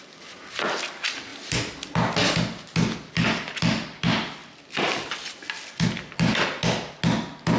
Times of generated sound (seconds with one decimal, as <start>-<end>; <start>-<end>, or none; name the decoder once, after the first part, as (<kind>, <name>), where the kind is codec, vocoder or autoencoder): none